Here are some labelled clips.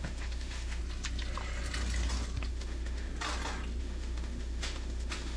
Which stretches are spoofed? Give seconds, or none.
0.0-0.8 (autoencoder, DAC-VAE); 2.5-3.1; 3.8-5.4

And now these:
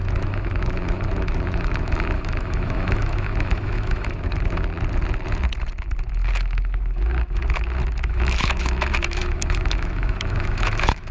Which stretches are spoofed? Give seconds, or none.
0.0-4.7 (autoencoder, DAC-VAE); 6.3-7.4; 8.0-11.1

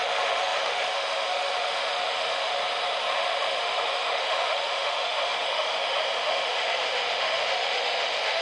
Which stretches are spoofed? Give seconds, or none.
0.0-2.6 (autoencoder, DAC-VAE); 3.1-8.4

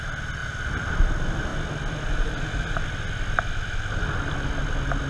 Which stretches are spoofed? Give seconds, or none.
none

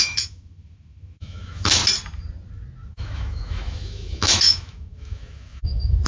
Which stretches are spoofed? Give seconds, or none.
0.0-1.8 (autoencoder, DAC-VAE); 2.9-6.1

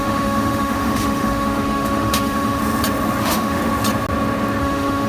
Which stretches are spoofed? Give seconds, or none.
0.0-2.6 (autoencoder, DAC-VAE); 3.2-3.6; 4.6-5.1

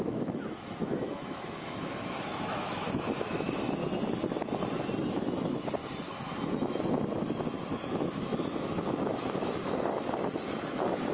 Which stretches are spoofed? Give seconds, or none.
0.0-3.8 (autoencoder, DAC-VAE); 5.1-5.8; 7.7-11.1

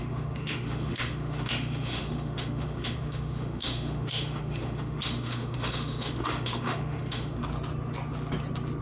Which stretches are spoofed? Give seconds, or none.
0.0-7.4 (autoencoder, DAC-VAE)